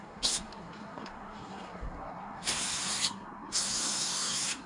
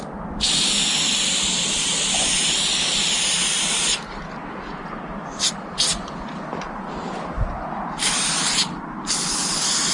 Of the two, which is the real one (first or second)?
second